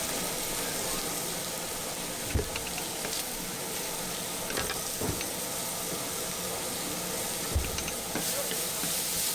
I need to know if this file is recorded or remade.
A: recorded